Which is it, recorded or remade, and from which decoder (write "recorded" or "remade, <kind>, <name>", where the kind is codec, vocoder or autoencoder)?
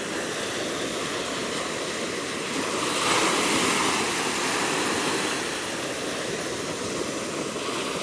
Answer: recorded